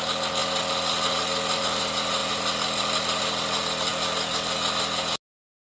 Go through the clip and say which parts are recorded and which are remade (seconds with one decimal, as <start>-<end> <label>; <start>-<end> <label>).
0.0-5.7 recorded